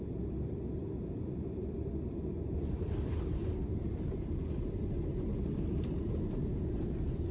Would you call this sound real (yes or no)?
no